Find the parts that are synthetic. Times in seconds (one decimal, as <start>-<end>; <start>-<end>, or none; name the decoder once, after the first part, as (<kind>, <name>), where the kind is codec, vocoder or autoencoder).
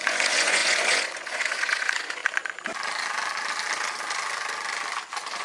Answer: 0.0-2.2 (vocoder, Vocos)